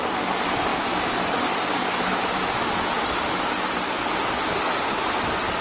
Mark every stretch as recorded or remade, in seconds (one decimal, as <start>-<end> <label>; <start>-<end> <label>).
0.0-0.7 remade; 0.7-4.1 recorded; 4.1-5.6 remade